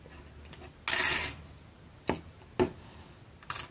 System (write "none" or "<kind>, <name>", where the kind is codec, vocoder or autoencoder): none